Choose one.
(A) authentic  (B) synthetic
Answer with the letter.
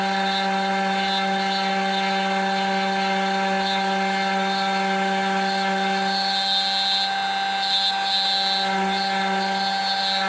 A